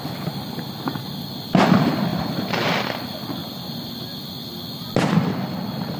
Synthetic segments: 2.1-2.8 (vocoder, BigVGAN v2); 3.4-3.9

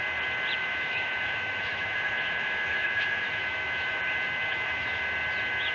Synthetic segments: 0.6-4.0 (autoencoder, DAC-VAE); 4.4-5.0

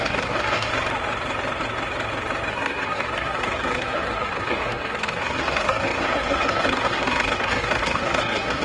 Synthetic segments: 0.0-0.7 (codec, SNAC); 2.5-8.6